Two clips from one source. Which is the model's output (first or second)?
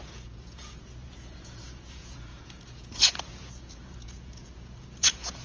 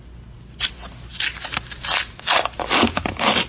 first